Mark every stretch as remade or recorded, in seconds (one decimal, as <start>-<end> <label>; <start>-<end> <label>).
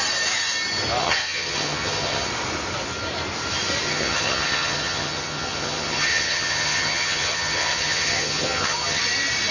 0.0-1.0 recorded; 1.0-2.3 remade; 2.3-3.9 recorded; 3.9-9.0 remade; 9.0-9.5 recorded